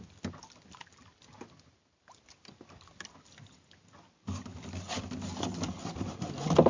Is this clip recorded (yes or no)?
yes